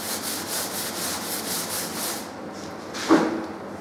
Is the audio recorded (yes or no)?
yes